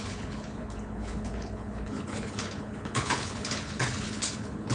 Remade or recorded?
remade